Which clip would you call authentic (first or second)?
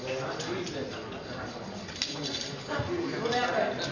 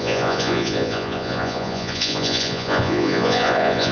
first